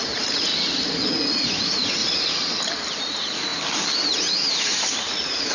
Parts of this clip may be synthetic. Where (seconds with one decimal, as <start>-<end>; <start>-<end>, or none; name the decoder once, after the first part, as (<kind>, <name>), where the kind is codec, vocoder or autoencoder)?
0.0-0.5 (vocoder, Vocos); 1.1-2.0; 3.0-3.5; 4.9-5.5